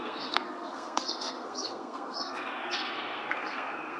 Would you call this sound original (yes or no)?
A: no